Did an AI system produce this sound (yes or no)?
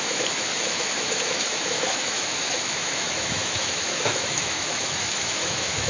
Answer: yes